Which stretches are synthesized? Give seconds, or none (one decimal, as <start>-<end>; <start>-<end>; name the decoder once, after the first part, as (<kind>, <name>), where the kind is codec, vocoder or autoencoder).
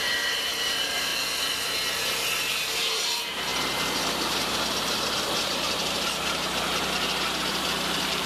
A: 0.0-1.1 (vocoder, BigVGAN v2); 2.5-3.5; 5.2-6.4; 7.5-8.3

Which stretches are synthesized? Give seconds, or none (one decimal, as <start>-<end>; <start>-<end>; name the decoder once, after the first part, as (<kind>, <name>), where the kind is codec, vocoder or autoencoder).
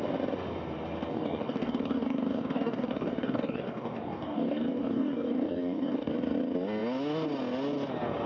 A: 1.1-6.1 (codec, DAC)